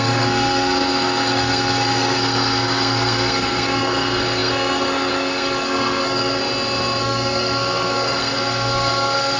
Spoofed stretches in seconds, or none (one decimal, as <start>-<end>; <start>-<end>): 0.0-6.4; 7.0-9.4

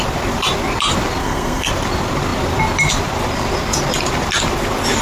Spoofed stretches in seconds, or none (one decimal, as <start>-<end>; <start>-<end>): 1.2-1.7

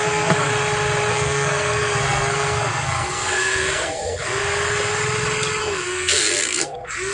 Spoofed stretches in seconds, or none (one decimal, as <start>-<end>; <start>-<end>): 0.0-0.5; 1.1-4.4; 5.6-7.1

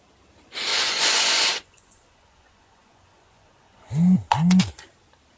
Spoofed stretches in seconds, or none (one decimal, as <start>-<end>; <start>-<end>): 0.7-3.9

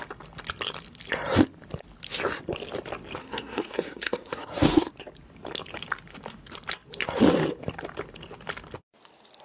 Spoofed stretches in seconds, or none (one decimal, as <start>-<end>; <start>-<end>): 3.2-4.9

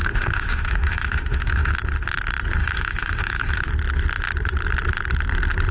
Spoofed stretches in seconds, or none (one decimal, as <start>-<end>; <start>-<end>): 0.0-1.7; 2.6-3.7

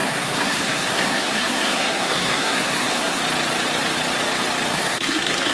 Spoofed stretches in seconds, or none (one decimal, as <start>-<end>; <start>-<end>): 0.0-3.2; 4.7-5.5

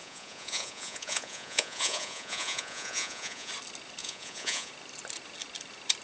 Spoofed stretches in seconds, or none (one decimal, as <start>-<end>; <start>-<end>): 0.0-3.5; 4.0-4.7